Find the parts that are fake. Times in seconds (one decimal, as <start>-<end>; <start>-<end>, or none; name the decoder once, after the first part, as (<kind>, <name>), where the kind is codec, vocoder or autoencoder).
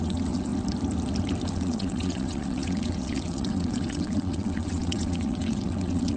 0.0-0.5 (vocoder, WaveNeXt); 1.5-6.2